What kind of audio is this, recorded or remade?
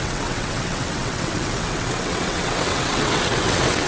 remade